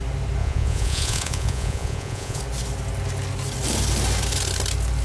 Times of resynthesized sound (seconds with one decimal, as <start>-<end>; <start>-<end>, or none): 0.4-2.4